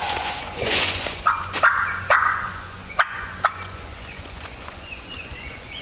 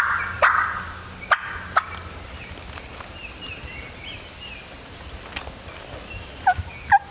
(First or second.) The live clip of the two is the second